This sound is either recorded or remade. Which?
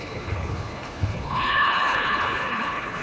remade